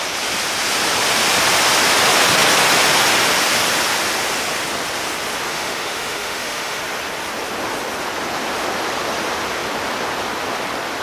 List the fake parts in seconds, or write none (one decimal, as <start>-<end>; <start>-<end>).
5.5-6.8